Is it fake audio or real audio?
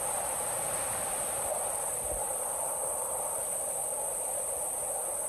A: real